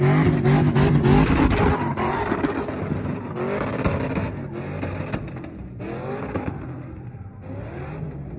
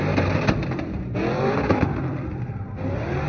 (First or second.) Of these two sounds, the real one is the first